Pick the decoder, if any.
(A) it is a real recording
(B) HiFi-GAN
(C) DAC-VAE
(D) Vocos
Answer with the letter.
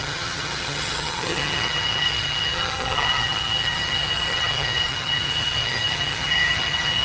B